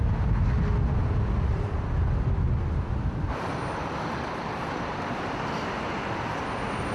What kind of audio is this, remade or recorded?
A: recorded